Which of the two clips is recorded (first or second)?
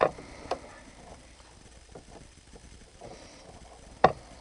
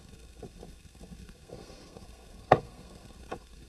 first